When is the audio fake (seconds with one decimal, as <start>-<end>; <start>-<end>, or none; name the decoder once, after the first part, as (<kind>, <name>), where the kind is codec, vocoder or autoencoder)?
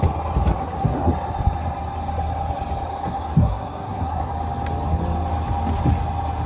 0.6-1.1 (codec, SNAC); 3.1-4.3